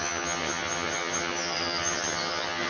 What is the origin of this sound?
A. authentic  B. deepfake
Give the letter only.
B